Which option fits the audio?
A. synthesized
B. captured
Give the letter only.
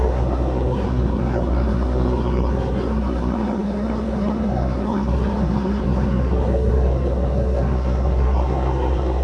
A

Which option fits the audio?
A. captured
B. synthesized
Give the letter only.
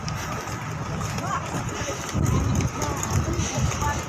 A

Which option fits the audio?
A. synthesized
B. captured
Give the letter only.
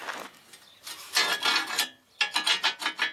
B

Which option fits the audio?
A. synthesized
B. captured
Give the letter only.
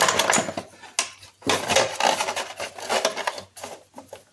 B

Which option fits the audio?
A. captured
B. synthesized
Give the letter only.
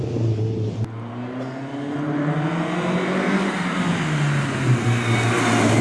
A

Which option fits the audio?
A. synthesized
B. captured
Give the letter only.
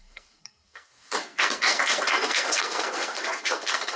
A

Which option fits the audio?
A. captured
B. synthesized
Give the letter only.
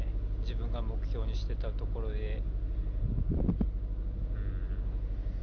A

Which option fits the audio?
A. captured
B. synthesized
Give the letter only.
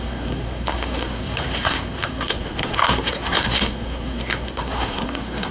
B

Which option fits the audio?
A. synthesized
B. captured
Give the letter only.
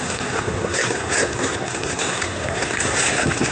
A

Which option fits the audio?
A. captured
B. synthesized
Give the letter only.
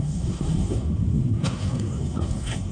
B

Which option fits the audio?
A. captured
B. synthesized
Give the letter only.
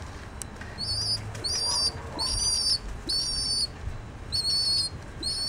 A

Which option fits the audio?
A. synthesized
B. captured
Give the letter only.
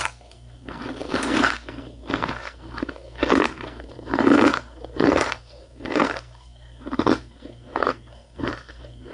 A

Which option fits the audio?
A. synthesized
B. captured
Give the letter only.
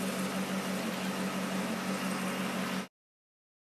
B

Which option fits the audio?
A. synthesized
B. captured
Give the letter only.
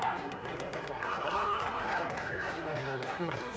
A